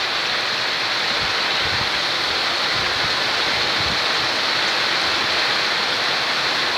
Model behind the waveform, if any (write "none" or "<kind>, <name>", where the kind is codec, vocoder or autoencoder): none